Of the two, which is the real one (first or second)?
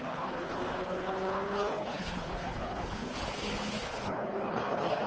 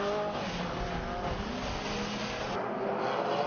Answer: second